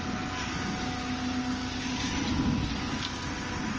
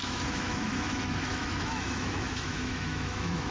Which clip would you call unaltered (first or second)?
first